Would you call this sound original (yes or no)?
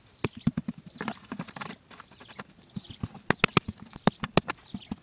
yes